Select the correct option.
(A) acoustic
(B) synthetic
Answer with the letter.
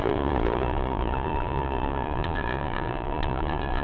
B